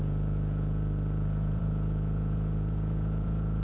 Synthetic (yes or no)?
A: yes